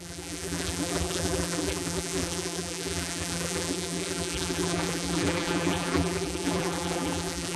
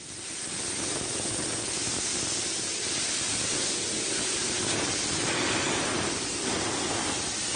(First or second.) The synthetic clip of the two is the first